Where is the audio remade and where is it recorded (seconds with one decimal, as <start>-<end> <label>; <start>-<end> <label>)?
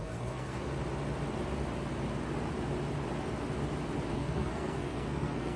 0.0-0.7 remade; 0.7-4.1 recorded; 4.1-5.6 remade